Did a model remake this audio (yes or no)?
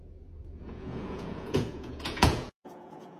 yes